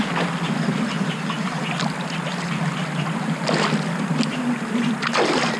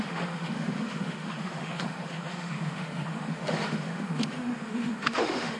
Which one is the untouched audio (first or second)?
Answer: first